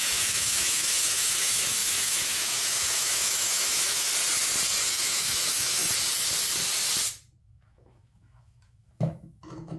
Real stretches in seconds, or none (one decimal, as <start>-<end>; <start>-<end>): 4.1-4.9; 5.8-7.4